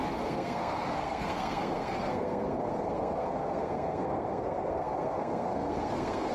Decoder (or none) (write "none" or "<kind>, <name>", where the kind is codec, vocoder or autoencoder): codec, SNAC